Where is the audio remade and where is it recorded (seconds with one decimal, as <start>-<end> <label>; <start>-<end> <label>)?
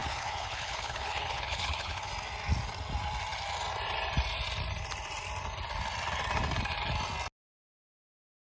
0.0-2.1 remade; 2.1-8.5 recorded